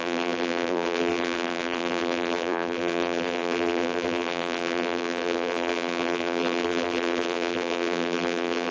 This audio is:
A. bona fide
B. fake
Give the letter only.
B